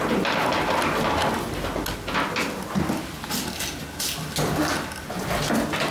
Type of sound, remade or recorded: recorded